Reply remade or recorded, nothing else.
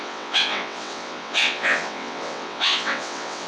remade